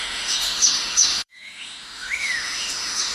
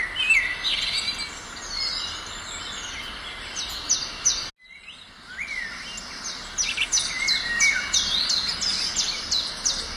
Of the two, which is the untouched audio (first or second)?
second